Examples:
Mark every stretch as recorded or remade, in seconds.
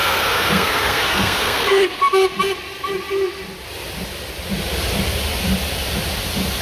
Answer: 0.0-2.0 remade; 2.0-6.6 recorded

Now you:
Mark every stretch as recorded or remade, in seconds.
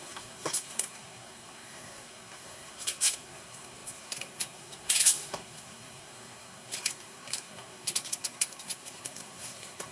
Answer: 0.0-9.9 remade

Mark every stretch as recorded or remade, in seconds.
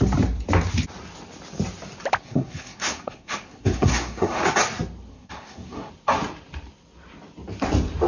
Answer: 0.0-2.2 recorded; 2.2-4.4 remade; 4.4-5.1 recorded; 5.1-5.9 remade; 5.9-8.1 recorded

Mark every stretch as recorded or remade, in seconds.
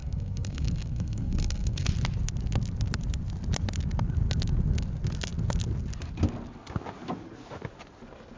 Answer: 0.0-1.9 remade; 1.9-8.4 recorded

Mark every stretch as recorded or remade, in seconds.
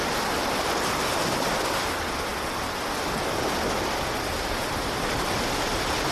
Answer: 0.0-6.1 recorded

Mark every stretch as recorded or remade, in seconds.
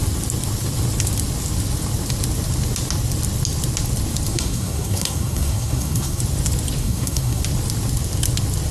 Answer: 0.0-4.3 recorded; 4.3-6.2 remade; 6.2-6.8 recorded; 6.8-7.4 remade; 7.4-8.7 recorded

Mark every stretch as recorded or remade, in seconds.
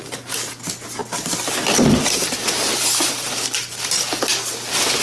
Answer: 0.0-5.0 recorded